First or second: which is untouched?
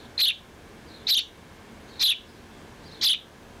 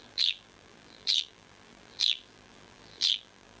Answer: first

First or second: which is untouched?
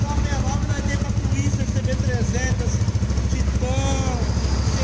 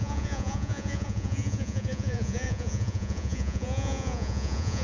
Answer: first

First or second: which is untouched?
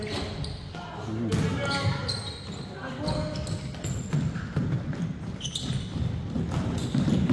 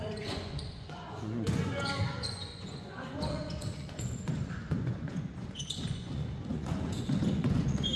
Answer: first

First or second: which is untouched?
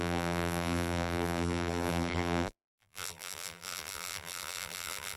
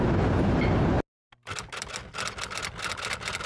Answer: second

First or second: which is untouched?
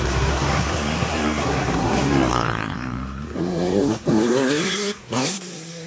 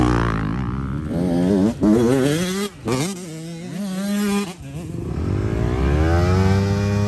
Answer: second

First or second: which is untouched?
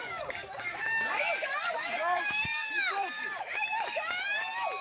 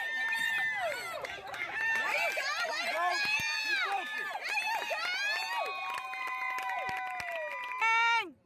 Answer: second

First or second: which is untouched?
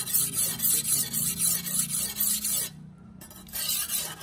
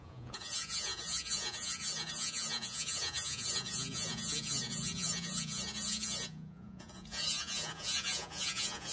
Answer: first